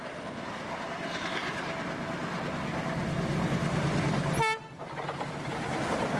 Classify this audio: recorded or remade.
recorded